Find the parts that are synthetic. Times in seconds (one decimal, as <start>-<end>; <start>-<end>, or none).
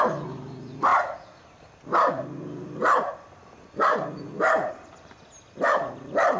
none